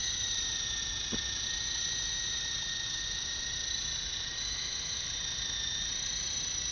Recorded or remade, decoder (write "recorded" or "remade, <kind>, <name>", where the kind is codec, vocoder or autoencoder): recorded